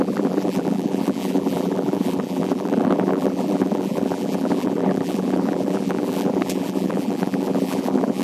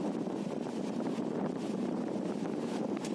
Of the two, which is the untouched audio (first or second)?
second